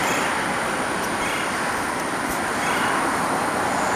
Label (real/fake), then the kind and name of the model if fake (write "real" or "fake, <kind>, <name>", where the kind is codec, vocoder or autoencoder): real